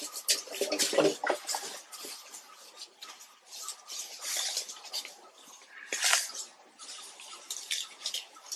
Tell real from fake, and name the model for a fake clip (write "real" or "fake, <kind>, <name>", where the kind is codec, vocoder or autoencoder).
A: real